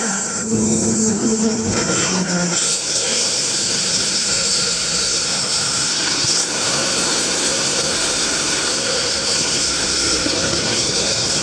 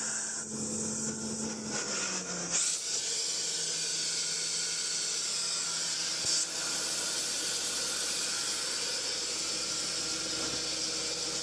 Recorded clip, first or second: second